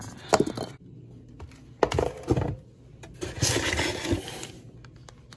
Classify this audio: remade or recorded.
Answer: recorded